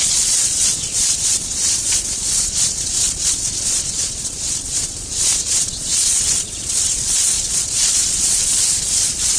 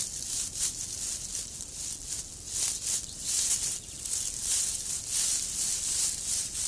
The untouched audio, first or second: second